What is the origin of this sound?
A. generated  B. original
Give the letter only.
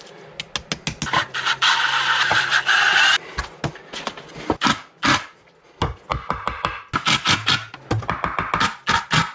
B